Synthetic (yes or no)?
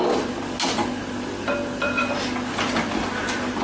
no